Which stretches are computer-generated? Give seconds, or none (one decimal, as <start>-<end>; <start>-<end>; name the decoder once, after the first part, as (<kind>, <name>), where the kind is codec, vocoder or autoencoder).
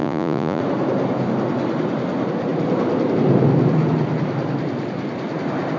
0.0-0.6 (vocoder, Vocos)